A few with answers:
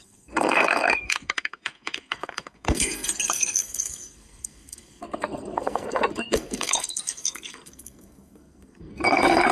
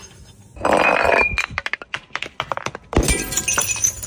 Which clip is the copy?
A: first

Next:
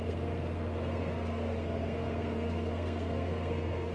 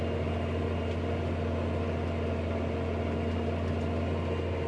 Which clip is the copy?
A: first